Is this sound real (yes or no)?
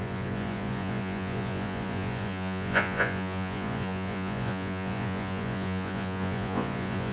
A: no